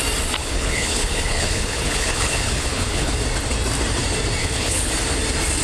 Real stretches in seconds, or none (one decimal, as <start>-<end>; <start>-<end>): 0.0-0.4; 3.1-4.4; 4.9-5.6